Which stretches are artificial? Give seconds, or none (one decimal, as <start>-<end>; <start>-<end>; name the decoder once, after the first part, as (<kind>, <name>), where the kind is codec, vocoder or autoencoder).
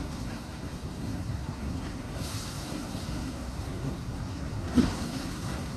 0.0-5.8 (codec, SNAC)